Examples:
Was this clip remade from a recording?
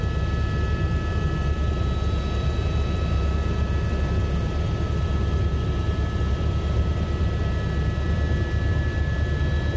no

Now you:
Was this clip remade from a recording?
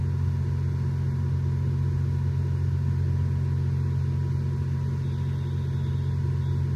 no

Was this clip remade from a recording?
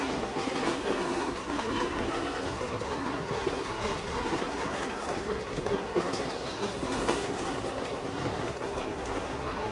yes